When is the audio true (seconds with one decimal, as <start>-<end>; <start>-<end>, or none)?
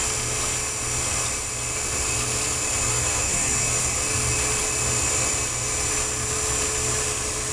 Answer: 0.0-2.9; 4.0-7.5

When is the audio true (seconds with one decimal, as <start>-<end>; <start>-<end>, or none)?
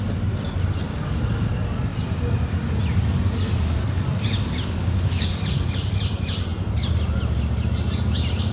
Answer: 0.0-0.9; 1.5-4.8; 5.4-8.5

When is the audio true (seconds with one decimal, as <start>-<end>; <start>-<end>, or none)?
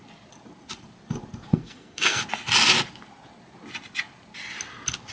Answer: 0.0-1.5; 2.2-5.1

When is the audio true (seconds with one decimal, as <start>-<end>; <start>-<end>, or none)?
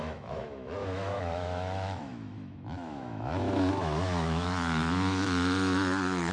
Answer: none